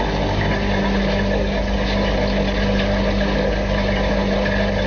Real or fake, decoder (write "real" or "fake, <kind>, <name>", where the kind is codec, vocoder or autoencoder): real